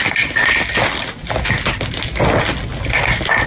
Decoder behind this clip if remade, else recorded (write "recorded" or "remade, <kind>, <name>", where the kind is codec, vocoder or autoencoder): recorded